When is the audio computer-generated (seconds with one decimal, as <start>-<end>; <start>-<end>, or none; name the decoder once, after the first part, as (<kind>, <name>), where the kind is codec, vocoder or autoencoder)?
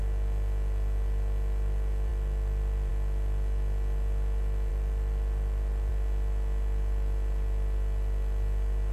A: 4.7-5.9 (vocoder, BigVGAN v2)